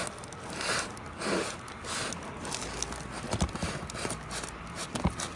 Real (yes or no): yes